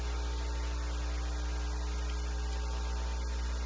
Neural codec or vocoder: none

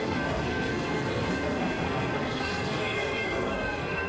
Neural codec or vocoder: codec, SNAC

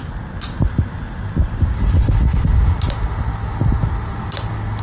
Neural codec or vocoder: none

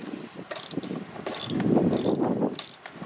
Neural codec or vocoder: none